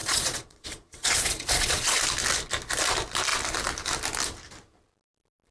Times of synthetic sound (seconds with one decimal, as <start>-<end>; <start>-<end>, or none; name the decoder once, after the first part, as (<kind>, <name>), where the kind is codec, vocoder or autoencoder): 0.0-2.0 (vocoder, Vocos)